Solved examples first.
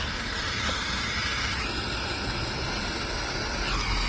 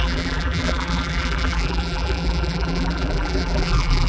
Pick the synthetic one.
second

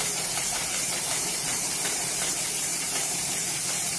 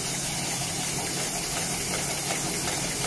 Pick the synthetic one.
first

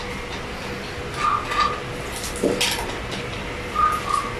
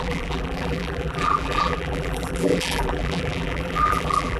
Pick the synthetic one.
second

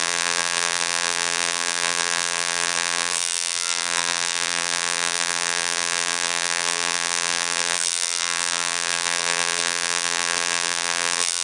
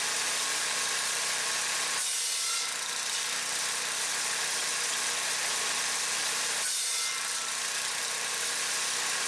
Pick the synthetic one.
first